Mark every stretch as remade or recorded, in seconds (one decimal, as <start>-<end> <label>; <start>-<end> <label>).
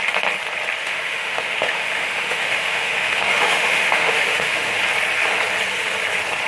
0.0-0.8 recorded; 0.8-4.7 remade; 4.7-6.5 recorded